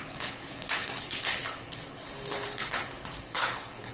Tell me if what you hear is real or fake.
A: fake